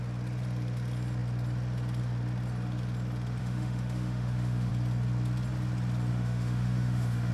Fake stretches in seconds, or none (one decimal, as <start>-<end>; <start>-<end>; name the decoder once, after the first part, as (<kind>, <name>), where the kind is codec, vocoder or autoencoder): 3.4-4.7 (autoencoder, DAC-VAE); 6.1-7.3

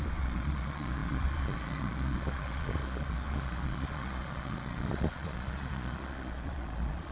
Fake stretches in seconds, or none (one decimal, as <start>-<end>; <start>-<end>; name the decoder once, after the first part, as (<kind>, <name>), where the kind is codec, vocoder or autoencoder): 0.0-7.1 (vocoder, Vocos)

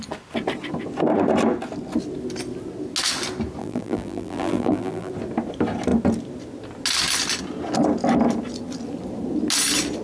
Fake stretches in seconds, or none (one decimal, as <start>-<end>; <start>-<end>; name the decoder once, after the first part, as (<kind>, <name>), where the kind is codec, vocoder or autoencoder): 3.6-5.1 (vocoder, BigVGAN v2)